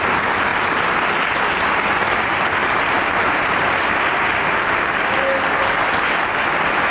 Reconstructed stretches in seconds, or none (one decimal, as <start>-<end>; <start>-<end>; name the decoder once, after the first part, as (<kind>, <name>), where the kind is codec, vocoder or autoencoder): none